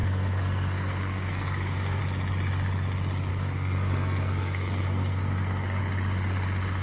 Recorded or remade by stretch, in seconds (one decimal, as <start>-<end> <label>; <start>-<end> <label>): 0.0-2.0 remade; 2.0-3.3 recorded; 3.3-5.8 remade; 5.8-6.8 recorded